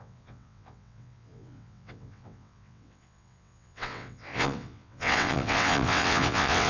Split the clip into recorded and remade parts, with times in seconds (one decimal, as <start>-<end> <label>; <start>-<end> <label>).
0.0-6.7 remade